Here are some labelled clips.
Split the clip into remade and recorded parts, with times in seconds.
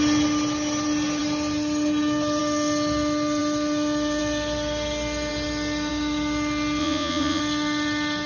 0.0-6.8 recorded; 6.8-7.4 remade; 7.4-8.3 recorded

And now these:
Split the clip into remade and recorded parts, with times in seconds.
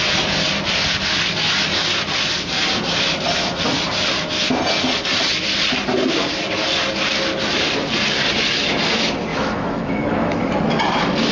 0.0-9.3 recorded; 9.3-10.8 remade; 10.8-11.3 recorded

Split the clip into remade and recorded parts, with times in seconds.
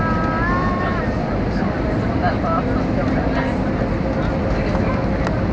0.0-5.5 recorded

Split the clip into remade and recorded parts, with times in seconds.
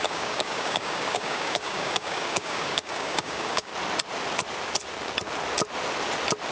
0.0-3.7 remade; 3.7-6.5 recorded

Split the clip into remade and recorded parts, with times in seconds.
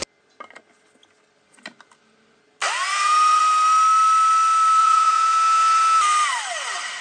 0.0-2.9 recorded; 2.9-3.4 remade; 3.4-4.8 recorded; 4.8-6.0 remade; 6.0-7.0 recorded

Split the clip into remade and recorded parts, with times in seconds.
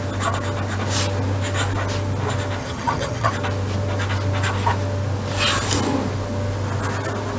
0.0-2.6 recorded; 2.6-3.3 remade; 3.3-7.4 recorded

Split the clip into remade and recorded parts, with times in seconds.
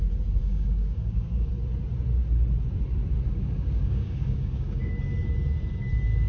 0.0-0.4 recorded; 0.4-1.5 remade; 1.5-3.3 recorded; 3.3-4.9 remade; 4.9-6.3 recorded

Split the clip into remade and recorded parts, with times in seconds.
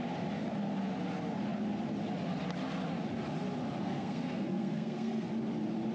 0.0-3.8 recorded; 3.8-5.3 remade; 5.3-5.9 recorded